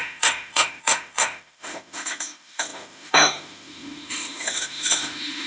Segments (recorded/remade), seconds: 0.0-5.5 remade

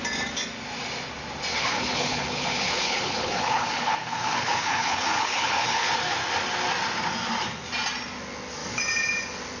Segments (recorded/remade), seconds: 0.0-1.5 recorded; 1.5-5.9 remade; 5.9-9.6 recorded